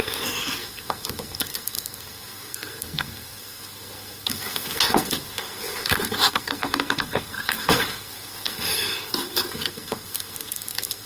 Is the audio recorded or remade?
remade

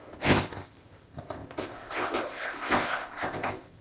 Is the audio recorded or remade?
remade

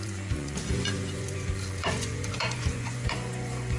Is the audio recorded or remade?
remade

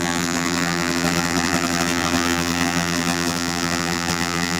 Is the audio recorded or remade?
remade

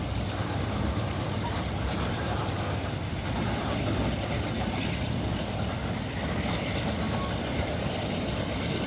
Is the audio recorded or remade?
recorded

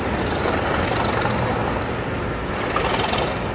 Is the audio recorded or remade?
recorded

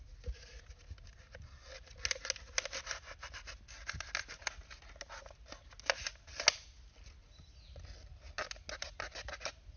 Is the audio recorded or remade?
recorded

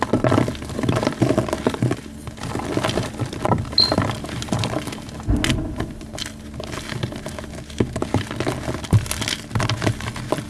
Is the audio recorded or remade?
recorded